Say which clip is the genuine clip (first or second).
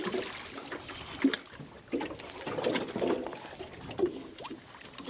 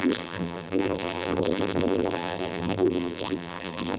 first